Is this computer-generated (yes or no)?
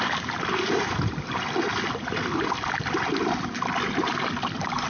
no